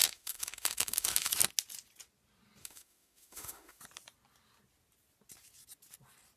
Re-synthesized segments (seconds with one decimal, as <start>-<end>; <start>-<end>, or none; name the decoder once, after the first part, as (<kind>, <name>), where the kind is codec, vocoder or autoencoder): 0.0-1.3 (autoencoder, DAC-VAE); 2.6-3.8